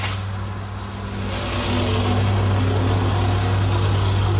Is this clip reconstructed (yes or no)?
no